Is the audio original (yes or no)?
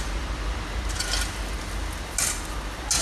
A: yes